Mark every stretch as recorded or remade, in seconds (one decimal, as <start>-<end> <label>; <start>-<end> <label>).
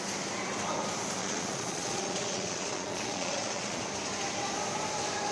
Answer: 0.0-1.2 recorded; 1.2-3.8 remade; 3.8-5.3 recorded